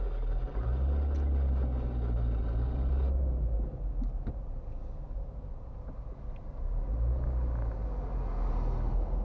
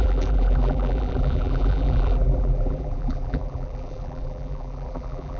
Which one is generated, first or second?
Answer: second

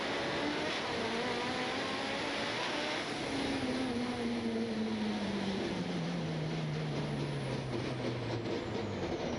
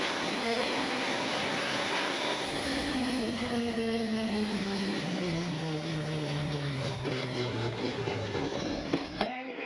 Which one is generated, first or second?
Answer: second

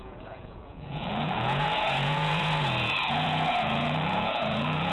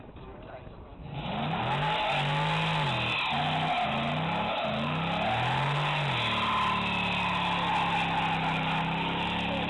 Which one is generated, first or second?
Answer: first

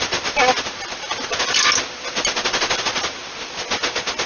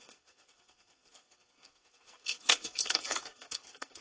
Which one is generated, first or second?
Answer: second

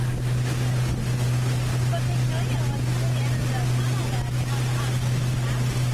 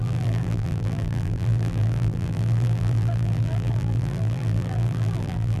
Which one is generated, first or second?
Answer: second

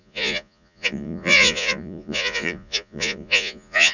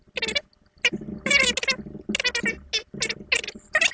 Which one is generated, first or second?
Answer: first